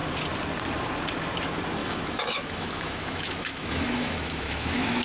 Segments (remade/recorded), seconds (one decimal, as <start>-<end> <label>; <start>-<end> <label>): 0.0-1.8 recorded; 1.8-5.0 remade